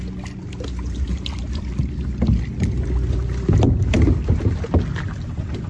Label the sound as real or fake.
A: real